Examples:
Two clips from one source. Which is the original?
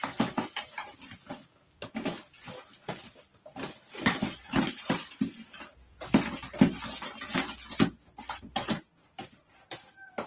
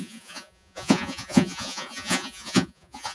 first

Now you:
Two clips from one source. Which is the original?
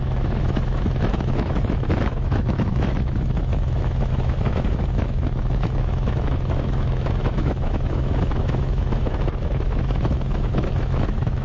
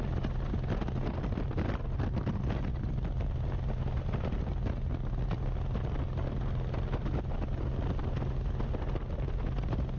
second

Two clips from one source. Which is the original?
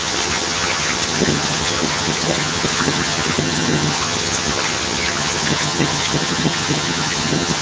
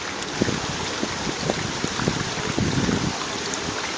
second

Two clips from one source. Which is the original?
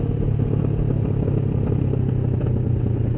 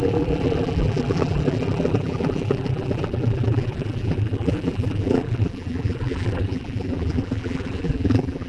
first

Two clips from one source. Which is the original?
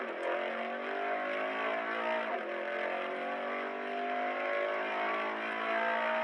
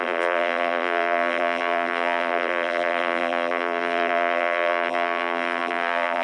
first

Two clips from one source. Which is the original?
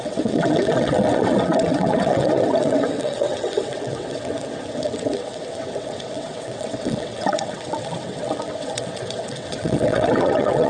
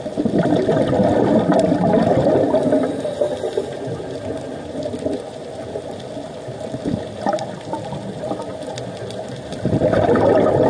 second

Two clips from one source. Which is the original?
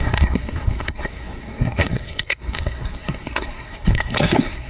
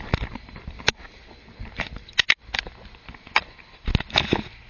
second